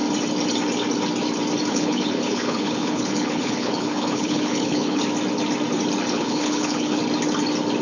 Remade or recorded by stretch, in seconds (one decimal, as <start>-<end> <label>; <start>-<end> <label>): 0.0-1.7 recorded; 1.7-5.0 remade; 5.0-6.1 recorded; 6.1-7.0 remade; 7.0-7.8 recorded